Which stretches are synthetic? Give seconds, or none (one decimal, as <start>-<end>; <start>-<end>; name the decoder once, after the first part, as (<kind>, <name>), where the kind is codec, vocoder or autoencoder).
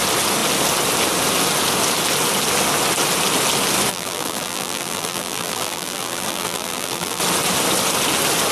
3.9-7.2 (vocoder, BigVGAN v2)